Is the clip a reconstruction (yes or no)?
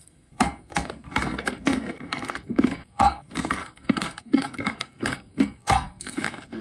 yes